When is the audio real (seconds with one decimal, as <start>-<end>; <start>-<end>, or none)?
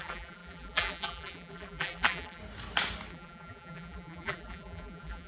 2.4-3.1